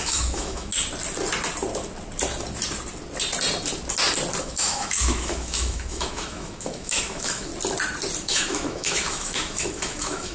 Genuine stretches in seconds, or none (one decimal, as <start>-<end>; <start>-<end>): 0.7-4.4; 7.5-8.2